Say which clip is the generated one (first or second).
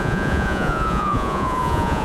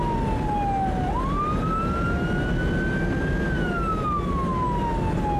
first